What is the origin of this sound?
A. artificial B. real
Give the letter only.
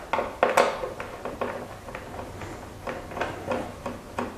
B